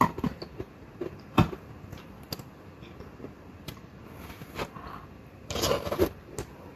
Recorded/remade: recorded